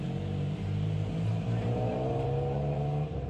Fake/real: fake